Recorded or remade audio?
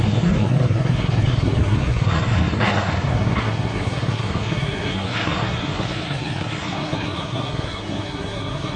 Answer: remade